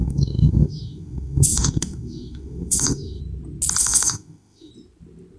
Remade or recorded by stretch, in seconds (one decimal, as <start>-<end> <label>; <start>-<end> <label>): 0.0-3.2 remade; 3.2-3.8 recorded; 3.8-4.7 remade; 4.7-5.4 recorded